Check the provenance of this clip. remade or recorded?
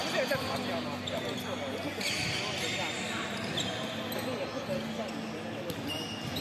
recorded